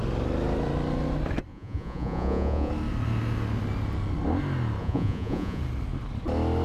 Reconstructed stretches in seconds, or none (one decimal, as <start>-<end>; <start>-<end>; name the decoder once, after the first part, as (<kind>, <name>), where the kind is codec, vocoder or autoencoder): 1.5-2.7 (vocoder, Vocos); 4.8-5.6